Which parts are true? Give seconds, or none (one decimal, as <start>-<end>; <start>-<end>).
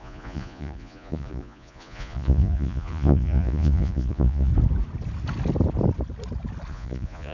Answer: 4.5-6.7